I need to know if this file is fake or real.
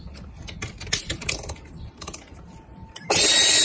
real